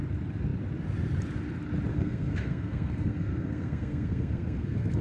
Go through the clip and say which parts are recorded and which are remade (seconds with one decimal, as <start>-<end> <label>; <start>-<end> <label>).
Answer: 0.0-1.9 recorded; 1.9-5.0 remade